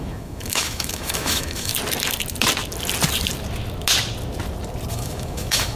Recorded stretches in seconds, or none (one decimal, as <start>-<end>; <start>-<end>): 1.7-4.9